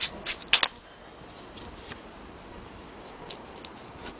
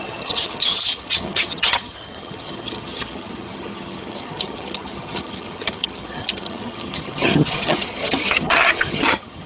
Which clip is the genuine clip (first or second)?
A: first